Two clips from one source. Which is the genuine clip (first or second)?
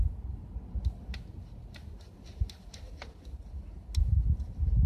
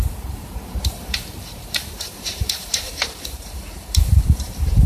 first